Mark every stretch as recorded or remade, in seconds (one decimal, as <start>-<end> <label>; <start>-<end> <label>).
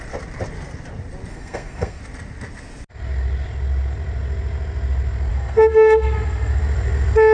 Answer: 0.0-1.3 recorded; 1.3-2.0 remade; 2.0-5.3 recorded; 5.3-6.6 remade; 6.6-7.3 recorded